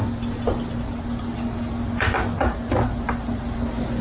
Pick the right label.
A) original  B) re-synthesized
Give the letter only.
A